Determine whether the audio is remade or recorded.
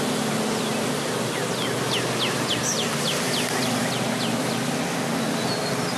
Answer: recorded